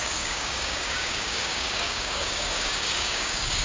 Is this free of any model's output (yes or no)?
no